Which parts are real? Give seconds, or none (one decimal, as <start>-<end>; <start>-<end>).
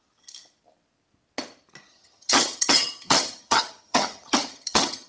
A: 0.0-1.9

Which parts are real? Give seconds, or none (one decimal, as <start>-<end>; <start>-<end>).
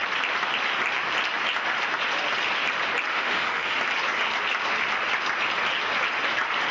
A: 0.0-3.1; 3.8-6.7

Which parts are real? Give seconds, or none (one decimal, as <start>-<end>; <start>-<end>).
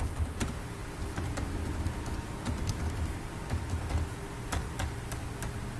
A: 0.0-5.8